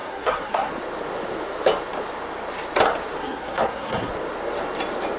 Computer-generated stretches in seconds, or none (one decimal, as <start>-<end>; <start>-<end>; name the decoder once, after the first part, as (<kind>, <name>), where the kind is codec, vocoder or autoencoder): 0.0-0.7 (codec, SNAC); 3.2-4.1